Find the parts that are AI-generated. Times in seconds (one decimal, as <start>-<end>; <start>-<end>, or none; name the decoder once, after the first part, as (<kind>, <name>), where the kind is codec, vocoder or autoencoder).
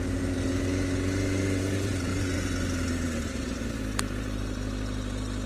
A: none